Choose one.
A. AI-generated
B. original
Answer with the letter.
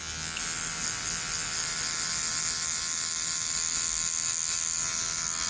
B